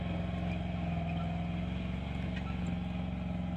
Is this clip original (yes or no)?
yes